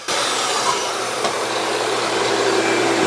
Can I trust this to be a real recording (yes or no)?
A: no